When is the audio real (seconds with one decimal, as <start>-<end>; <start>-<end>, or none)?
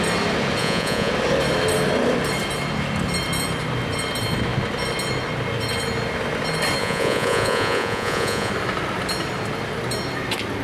0.0-0.6; 1.1-6.8; 8.5-10.6